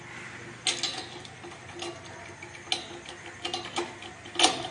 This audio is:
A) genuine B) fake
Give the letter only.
A